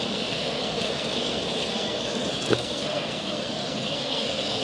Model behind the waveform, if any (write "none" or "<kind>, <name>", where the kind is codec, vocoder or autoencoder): codec, SNAC